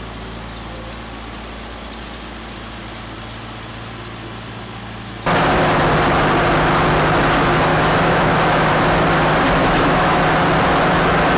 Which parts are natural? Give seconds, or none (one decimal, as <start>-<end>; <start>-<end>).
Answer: 0.0-7.7; 8.7-9.6; 10.2-11.4

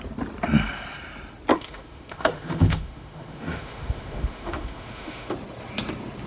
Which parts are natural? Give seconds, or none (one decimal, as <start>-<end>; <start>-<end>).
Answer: 0.0-1.5; 5.3-6.3

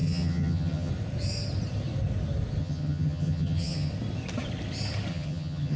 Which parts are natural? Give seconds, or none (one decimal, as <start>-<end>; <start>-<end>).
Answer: 0.9-2.6; 3.9-5.1